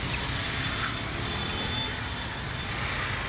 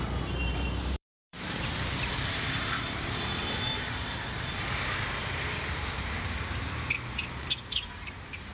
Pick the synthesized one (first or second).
second